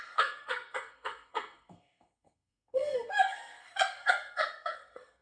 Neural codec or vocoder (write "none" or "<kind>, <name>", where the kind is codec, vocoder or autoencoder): codec, SNAC